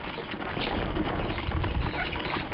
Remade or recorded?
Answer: recorded